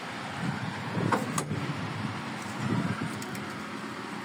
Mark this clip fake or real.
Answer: fake